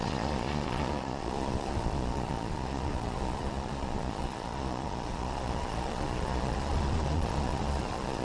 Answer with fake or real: fake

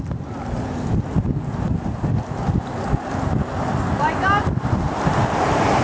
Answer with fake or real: real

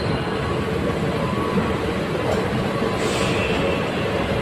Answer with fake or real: real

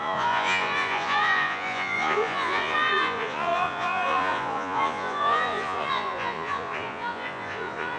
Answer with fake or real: fake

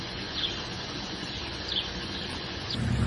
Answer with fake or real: fake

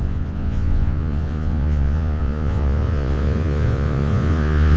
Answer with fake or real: fake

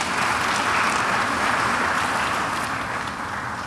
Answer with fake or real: real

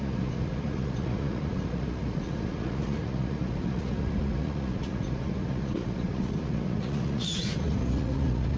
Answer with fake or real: fake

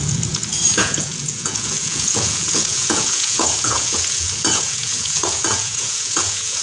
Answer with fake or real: fake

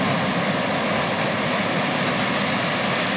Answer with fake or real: real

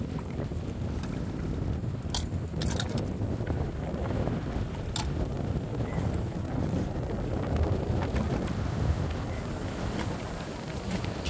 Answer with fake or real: real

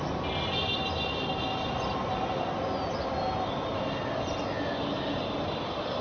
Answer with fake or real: real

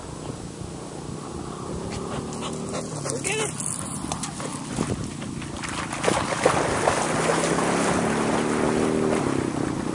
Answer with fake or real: real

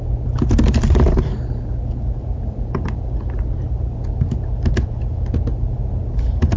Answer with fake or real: real